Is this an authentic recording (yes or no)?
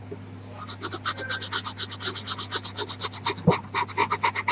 yes